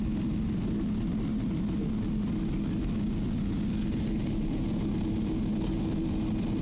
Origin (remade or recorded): recorded